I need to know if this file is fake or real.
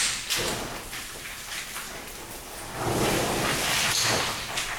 real